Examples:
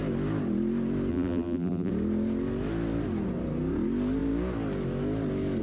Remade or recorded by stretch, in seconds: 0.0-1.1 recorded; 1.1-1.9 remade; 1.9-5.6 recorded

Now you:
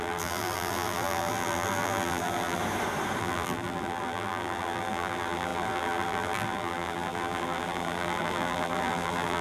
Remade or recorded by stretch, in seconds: 0.0-2.6 remade; 2.6-3.2 recorded; 3.2-9.4 remade

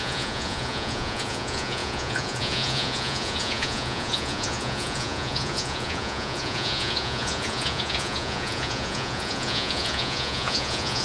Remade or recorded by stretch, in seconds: 0.0-11.0 remade

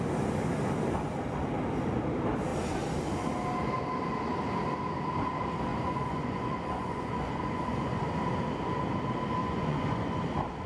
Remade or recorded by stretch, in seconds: 0.0-5.7 recorded; 5.7-8.0 remade; 8.0-9.4 recorded; 9.4-10.2 remade; 10.2-10.7 recorded

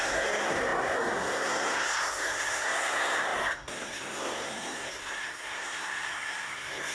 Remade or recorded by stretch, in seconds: 0.0-6.9 remade